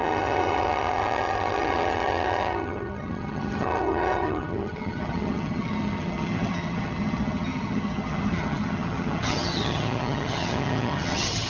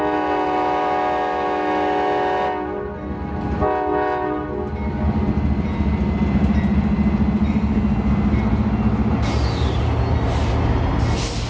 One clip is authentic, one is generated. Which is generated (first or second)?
first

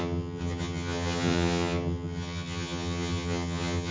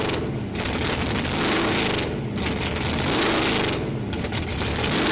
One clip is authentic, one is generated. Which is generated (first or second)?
first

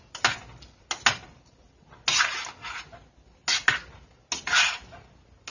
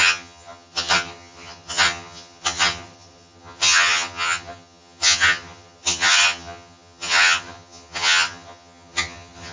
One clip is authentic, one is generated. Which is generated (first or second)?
second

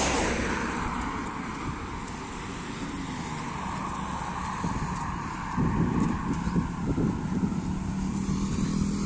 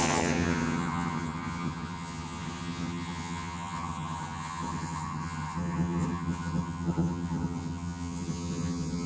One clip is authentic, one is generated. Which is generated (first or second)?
second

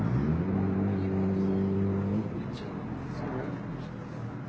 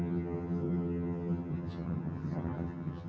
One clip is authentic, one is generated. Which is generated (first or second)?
second